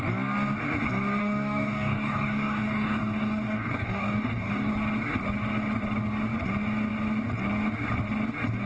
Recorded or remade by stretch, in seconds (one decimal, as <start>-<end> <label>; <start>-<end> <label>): 0.0-1.2 recorded; 1.2-4.7 remade; 4.7-8.7 recorded